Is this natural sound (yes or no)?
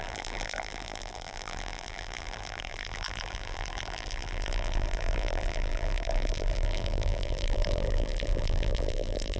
no